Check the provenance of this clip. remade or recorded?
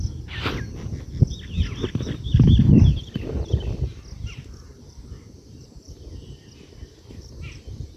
recorded